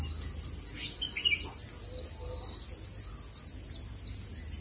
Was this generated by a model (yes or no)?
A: no